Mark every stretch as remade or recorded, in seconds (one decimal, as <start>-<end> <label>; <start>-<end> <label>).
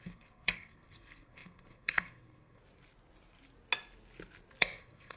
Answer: 0.0-2.6 remade; 2.6-4.6 recorded; 4.6-5.2 remade